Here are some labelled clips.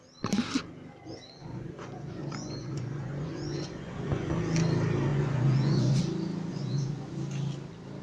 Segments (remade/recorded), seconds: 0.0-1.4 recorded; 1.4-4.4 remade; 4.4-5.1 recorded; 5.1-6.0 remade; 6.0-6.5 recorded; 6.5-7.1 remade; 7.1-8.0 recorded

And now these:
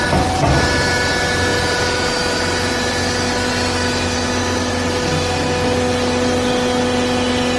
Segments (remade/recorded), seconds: 0.0-1.5 recorded; 1.5-2.1 remade; 2.1-7.6 recorded

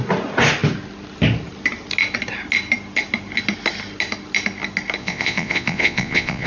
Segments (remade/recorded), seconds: 0.0-5.0 recorded; 5.0-6.5 remade

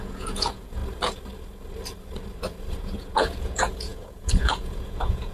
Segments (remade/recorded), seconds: 0.0-0.8 remade; 0.8-2.8 recorded; 2.8-5.3 remade

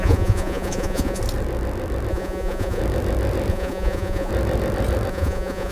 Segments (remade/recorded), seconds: 0.0-1.2 remade; 1.2-2.1 recorded; 2.1-2.8 remade; 2.8-3.5 recorded; 3.5-4.3 remade; 4.3-5.1 recorded; 5.1-5.7 remade